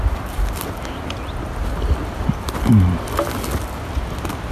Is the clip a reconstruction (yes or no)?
no